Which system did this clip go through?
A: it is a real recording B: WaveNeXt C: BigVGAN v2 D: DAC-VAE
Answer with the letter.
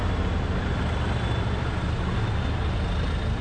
A